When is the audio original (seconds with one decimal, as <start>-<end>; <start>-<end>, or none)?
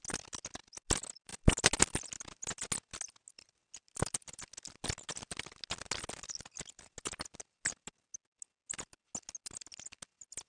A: 0.0-10.5